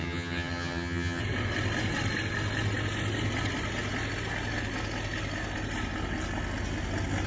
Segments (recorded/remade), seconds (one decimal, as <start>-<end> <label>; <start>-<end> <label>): 0.0-1.2 remade; 1.2-7.3 recorded